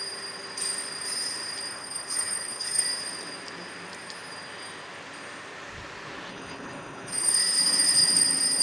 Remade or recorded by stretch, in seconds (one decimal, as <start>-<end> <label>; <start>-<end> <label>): 0.0-1.7 recorded; 1.7-2.8 remade; 2.8-6.3 recorded; 6.3-7.3 remade; 7.3-8.6 recorded

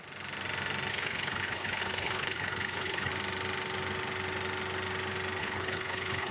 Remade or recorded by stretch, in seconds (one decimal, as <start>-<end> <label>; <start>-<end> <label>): 0.0-0.9 recorded; 0.9-3.1 remade; 3.1-5.4 recorded; 5.4-6.3 remade

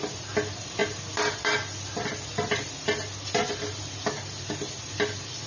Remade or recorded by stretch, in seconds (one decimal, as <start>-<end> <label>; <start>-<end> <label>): 0.0-5.5 recorded

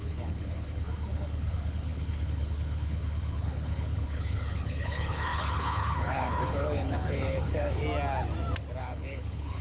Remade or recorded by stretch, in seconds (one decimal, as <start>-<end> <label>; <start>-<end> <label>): 0.0-7.8 remade; 7.8-8.8 recorded; 8.8-9.6 remade

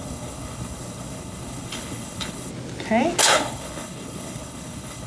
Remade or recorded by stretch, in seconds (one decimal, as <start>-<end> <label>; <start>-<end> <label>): 0.0-2.5 remade; 2.5-3.2 recorded; 3.2-5.1 remade

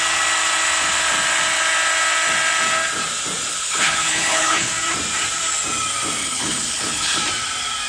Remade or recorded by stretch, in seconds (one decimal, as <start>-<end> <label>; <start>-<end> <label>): 0.0-3.5 recorded; 3.5-4.7 remade; 4.7-6.2 recorded; 6.2-7.2 remade; 7.2-7.9 recorded

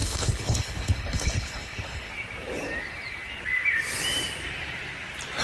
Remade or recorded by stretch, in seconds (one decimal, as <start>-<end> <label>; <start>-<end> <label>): 0.0-2.1 remade; 2.1-5.4 recorded